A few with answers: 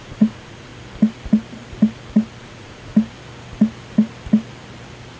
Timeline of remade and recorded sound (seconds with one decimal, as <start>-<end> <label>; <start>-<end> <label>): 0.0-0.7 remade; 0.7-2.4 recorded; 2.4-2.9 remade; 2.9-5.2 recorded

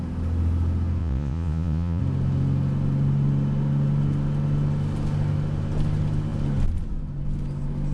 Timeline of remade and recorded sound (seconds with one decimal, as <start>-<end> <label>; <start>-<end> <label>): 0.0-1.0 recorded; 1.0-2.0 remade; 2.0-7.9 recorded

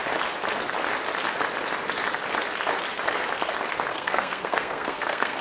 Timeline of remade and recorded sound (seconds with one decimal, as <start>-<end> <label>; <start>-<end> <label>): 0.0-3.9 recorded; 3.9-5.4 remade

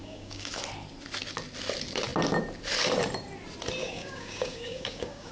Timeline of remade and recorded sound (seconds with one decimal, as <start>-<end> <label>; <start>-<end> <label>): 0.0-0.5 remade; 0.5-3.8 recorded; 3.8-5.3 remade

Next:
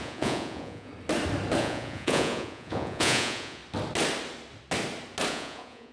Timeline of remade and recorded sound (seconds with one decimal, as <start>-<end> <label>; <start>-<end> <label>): 0.0-0.9 remade; 0.9-1.6 recorded; 1.6-3.6 remade; 3.6-5.3 recorded; 5.3-5.9 remade